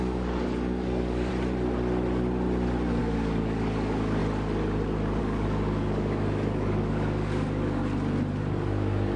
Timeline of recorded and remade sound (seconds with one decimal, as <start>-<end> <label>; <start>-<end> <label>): 0.0-1.3 remade; 1.3-3.0 recorded; 3.0-4.2 remade; 4.2-5.2 recorded; 5.2-7.8 remade; 7.8-8.4 recorded; 8.4-9.2 remade